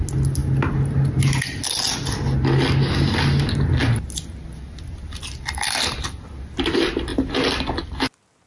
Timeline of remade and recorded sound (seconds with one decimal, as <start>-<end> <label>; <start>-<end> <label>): 0.0-8.5 recorded